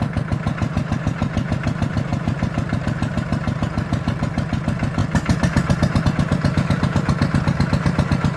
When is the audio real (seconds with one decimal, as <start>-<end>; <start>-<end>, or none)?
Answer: 0.0-8.4